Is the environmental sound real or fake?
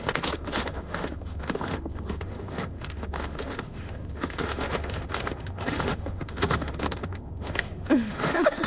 fake